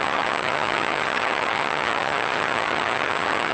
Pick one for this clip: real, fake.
fake